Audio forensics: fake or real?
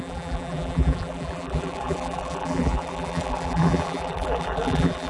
fake